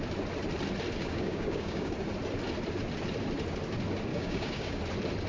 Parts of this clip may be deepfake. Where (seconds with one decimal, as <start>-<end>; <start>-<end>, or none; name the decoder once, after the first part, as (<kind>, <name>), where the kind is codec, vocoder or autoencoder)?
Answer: 1.0-1.9 (codec, DAC); 4.1-4.8